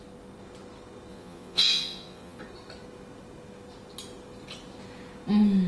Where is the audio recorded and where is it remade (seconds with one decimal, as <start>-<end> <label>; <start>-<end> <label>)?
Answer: 0.0-1.1 recorded; 1.1-2.4 remade; 2.4-5.7 recorded